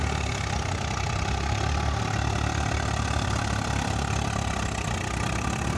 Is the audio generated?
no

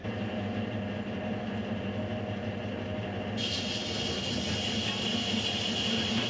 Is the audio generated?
no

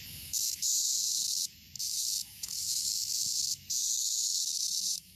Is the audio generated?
yes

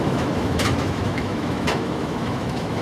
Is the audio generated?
yes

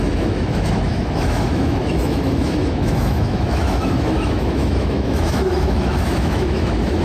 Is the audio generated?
yes